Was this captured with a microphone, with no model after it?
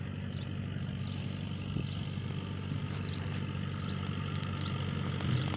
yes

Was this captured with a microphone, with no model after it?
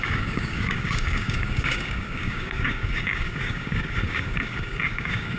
no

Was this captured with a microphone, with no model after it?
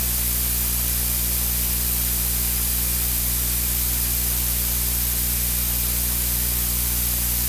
no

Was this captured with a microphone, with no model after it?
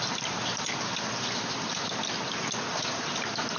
yes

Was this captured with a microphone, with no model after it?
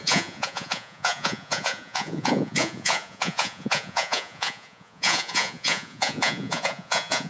no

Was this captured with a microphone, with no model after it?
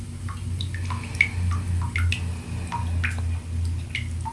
yes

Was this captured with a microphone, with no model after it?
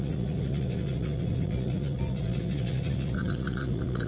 no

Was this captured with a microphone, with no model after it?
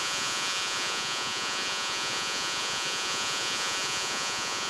no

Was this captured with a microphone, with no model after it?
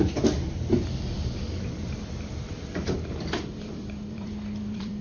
no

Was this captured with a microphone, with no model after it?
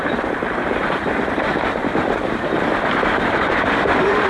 no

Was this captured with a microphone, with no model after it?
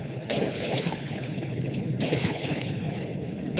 no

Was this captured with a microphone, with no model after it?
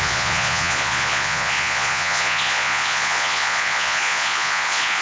no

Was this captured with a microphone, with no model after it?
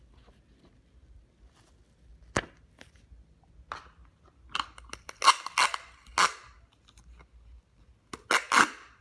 yes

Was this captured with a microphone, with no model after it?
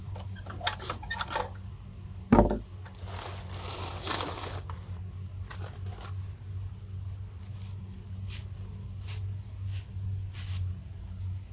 yes